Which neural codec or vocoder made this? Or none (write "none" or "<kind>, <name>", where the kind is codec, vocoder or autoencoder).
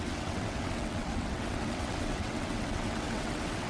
vocoder, WaveNeXt